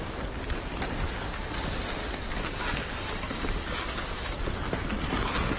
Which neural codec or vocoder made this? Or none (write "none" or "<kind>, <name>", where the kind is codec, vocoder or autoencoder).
none